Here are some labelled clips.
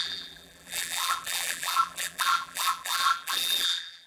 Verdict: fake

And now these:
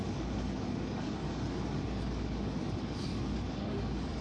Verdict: fake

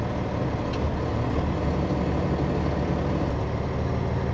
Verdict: real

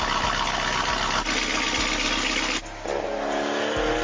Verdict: real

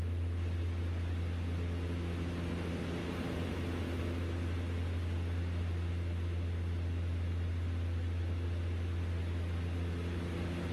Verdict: real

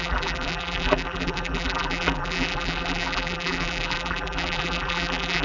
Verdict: fake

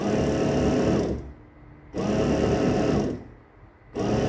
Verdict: real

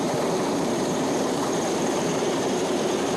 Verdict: fake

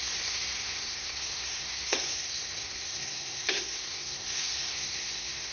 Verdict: fake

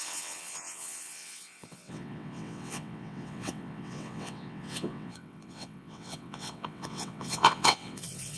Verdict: fake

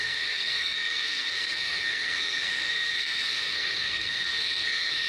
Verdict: fake